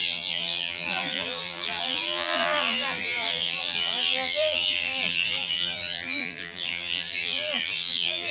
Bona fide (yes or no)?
no